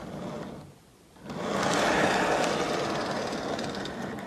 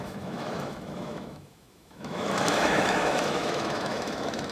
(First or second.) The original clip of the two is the first